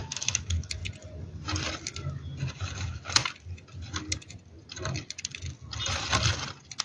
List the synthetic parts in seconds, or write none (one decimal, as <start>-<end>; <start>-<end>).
0.0-0.8; 2.5-3.2